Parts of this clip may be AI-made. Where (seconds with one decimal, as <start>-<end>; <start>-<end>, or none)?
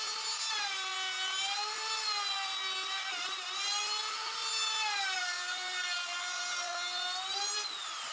5.2-6.4